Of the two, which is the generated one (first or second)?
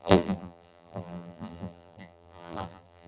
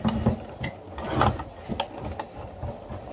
first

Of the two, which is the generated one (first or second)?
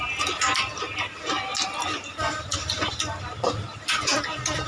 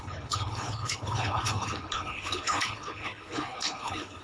second